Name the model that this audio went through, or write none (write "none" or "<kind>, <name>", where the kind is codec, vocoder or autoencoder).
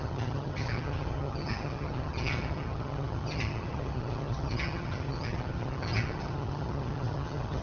vocoder, HiFi-GAN